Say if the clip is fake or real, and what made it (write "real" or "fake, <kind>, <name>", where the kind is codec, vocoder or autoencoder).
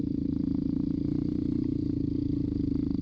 real